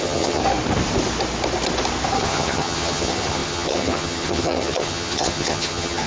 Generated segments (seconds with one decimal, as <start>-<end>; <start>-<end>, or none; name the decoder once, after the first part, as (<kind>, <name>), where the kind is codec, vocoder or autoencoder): 0.0-0.4 (vocoder, HiFi-GAN); 2.2-6.1